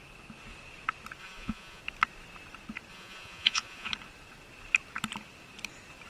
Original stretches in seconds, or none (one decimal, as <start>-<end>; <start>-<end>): 0.0-1.2; 1.8-2.9; 3.9-6.1